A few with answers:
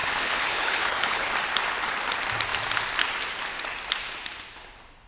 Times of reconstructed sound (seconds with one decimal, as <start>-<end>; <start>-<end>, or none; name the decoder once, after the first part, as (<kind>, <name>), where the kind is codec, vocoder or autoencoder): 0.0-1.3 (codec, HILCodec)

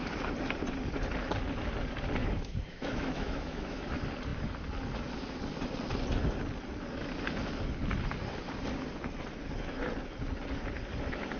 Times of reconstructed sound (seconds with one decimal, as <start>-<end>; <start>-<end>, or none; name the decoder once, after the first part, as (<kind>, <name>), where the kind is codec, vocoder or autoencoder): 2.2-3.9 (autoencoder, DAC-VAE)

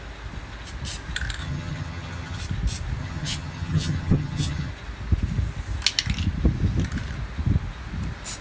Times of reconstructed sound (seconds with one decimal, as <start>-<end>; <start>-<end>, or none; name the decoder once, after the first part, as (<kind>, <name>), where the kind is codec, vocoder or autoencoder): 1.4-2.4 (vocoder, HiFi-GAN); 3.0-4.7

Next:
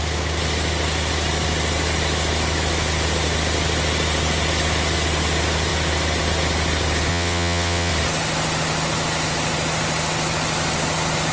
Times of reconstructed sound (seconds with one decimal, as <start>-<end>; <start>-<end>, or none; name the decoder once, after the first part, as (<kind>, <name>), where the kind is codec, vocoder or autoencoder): 7.1-7.9 (vocoder, WaveNeXt)